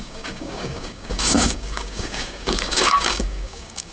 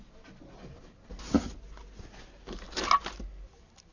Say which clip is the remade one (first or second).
first